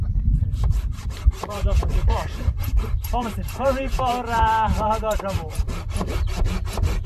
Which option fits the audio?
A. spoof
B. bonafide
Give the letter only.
A